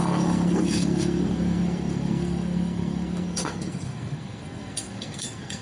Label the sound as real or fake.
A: fake